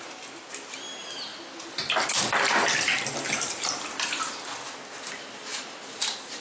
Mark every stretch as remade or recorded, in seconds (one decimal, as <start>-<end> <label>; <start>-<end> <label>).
0.0-6.4 recorded

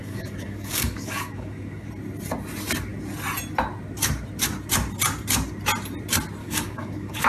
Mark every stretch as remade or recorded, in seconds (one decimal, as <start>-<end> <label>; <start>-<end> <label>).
0.0-1.9 remade; 1.9-6.4 recorded; 6.4-7.3 remade

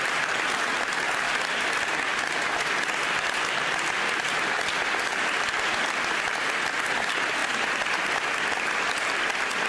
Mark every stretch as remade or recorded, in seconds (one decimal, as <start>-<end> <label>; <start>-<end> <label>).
0.0-9.7 recorded